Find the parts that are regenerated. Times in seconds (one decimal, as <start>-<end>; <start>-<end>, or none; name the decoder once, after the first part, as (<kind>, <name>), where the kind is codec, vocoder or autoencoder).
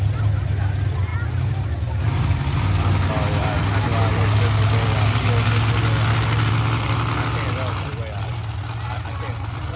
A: none